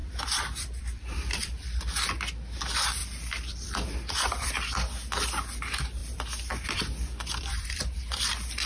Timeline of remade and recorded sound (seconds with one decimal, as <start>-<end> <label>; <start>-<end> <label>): 0.0-2.1 remade; 2.1-3.0 recorded; 3.0-4.5 remade; 4.5-6.0 recorded; 6.0-7.8 remade; 7.8-8.7 recorded